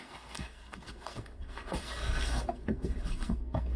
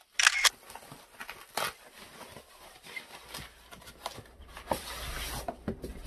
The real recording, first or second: second